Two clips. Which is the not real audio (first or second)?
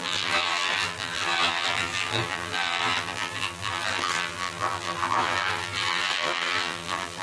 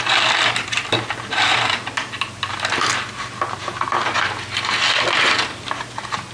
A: first